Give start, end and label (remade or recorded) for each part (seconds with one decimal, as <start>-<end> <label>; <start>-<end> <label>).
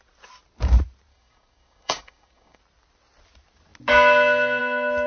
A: 0.0-1.1 recorded; 1.1-2.6 remade; 2.6-5.1 recorded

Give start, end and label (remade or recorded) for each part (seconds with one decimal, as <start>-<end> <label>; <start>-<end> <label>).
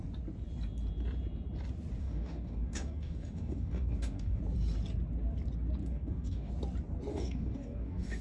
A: 0.0-2.0 recorded; 2.0-4.4 remade; 4.4-5.8 recorded; 5.8-6.5 remade; 6.5-7.1 recorded; 7.1-8.2 remade